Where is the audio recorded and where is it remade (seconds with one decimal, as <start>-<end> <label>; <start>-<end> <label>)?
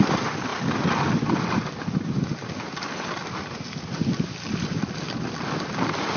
0.0-6.2 recorded